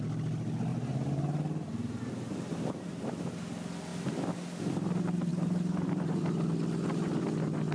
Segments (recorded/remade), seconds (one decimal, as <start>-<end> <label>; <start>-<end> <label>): 0.0-0.7 recorded; 0.7-2.0 remade; 2.0-2.5 recorded; 2.5-3.3 remade; 3.3-5.3 recorded; 5.3-6.2 remade; 6.2-7.7 recorded